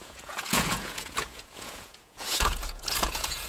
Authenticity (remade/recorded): remade